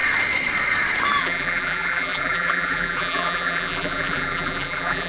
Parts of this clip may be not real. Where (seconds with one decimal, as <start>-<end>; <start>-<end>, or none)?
1.2-5.1